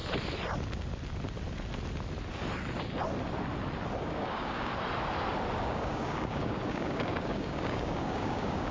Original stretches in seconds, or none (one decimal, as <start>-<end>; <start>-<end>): 0.0-4.0; 4.7-5.6